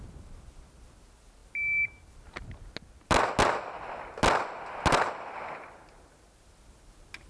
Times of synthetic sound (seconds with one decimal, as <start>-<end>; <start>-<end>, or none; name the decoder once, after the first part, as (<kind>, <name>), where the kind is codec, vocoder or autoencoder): none